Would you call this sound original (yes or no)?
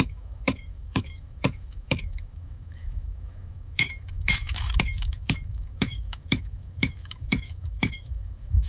no